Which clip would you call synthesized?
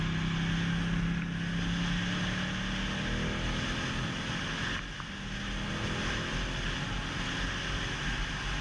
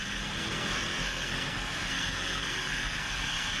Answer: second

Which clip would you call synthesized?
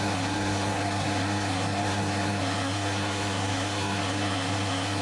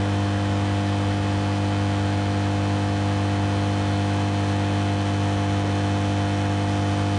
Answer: first